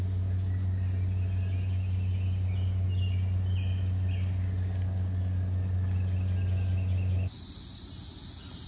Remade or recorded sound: recorded